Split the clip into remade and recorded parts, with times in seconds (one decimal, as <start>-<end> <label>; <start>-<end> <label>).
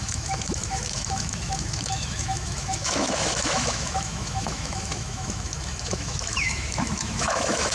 0.0-7.7 remade